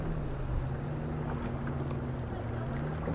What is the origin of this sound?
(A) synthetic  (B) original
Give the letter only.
B